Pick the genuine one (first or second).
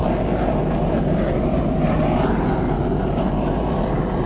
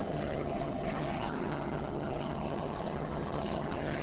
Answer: first